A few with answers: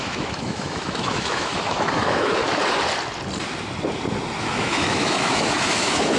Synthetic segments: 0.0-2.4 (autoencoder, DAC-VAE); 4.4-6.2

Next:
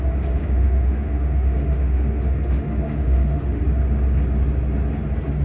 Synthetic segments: 0.4-3.6 (autoencoder, DAC-VAE)

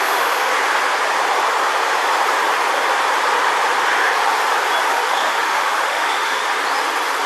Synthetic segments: 0.0-0.5 (autoencoder, DAC-VAE); 4.9-6.4